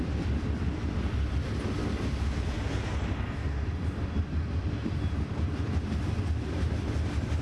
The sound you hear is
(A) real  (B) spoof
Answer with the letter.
A